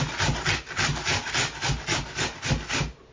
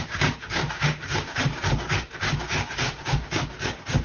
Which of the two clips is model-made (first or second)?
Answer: second